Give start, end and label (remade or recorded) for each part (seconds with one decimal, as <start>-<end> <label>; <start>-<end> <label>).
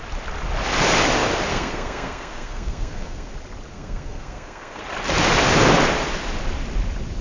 0.0-1.5 recorded; 1.5-3.3 remade; 3.3-3.7 recorded; 3.7-4.8 remade; 4.8-7.2 recorded